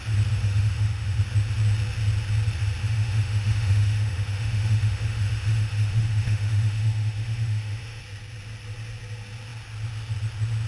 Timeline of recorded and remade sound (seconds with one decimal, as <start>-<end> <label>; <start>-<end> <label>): 0.0-0.4 recorded; 0.4-1.2 remade; 1.2-2.8 recorded; 2.8-8.0 remade; 8.0-10.7 recorded